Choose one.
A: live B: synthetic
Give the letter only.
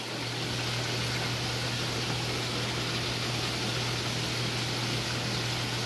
A